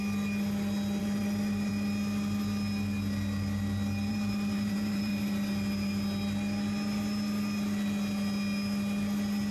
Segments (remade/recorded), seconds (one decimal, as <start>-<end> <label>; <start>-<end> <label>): 0.0-1.0 recorded; 1.0-1.7 remade; 1.7-4.1 recorded; 4.1-5.1 remade; 5.1-9.5 recorded

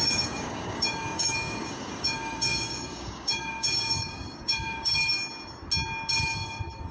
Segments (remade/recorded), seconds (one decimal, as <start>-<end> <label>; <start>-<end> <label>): 0.0-5.2 remade; 5.2-6.1 recorded; 6.1-6.9 remade

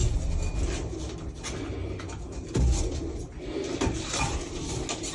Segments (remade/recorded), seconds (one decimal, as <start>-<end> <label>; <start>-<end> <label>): 0.0-5.1 recorded

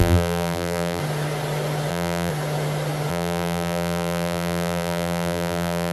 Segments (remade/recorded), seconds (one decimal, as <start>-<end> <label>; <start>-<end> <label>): 0.0-1.0 remade; 1.0-1.9 recorded; 1.9-2.3 remade; 2.3-3.1 recorded; 3.1-5.9 remade

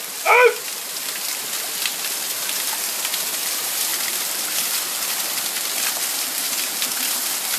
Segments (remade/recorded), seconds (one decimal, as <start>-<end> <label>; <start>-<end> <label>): 0.0-7.6 recorded

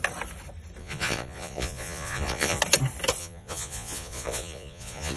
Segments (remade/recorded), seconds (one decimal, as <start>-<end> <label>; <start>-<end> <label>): 0.0-0.8 recorded; 0.8-2.6 remade; 2.6-3.2 recorded; 3.2-5.2 remade

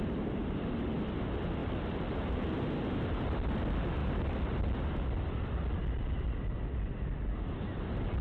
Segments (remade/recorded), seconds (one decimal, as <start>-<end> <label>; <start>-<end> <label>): 0.0-1.6 recorded; 1.6-2.8 remade; 2.8-4.0 recorded; 4.0-4.6 remade; 4.6-8.2 recorded